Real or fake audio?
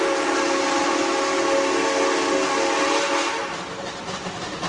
real